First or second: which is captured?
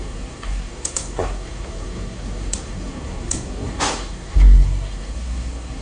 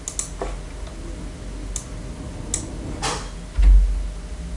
second